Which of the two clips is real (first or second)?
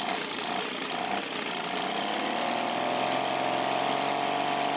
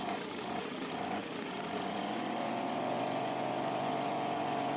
first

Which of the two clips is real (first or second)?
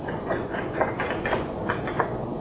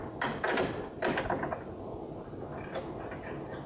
second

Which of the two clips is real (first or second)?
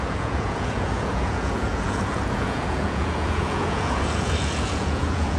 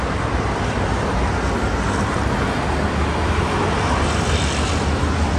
second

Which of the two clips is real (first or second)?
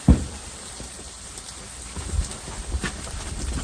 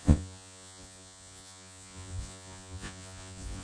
first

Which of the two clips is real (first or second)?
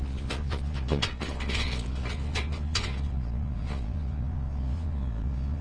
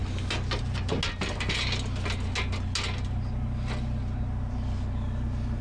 second